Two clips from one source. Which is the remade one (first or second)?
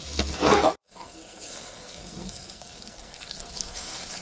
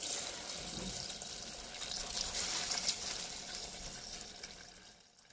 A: first